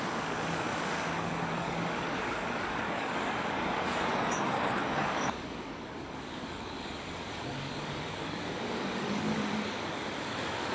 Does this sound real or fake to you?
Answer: fake